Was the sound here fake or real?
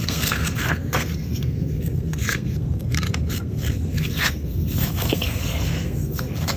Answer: fake